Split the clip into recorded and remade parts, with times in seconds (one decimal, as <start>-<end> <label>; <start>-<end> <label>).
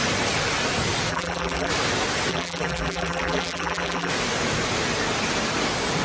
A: 0.0-1.1 recorded; 1.1-1.7 remade; 1.7-2.3 recorded; 2.3-4.1 remade; 4.1-6.0 recorded